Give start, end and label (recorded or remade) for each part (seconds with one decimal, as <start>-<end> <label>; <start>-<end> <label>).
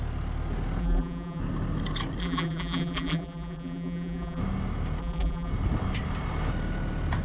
0.0-0.8 recorded; 0.8-1.4 remade; 1.4-2.2 recorded; 2.2-4.4 remade; 4.4-5.0 recorded; 5.0-5.5 remade; 5.5-7.2 recorded